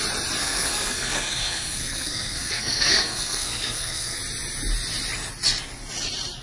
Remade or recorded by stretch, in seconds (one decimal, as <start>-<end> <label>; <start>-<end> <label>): 0.0-0.4 recorded; 0.4-4.2 remade; 4.2-6.4 recorded